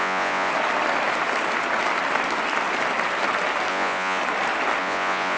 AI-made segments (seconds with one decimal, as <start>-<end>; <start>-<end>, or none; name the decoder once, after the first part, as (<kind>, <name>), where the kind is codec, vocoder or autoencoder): 0.0-0.5 (vocoder, Vocos); 3.7-4.2; 4.8-5.4